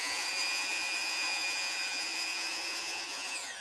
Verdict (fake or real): fake